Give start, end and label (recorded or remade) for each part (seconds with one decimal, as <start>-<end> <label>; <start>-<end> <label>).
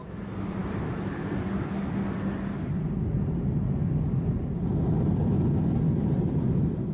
0.0-6.9 recorded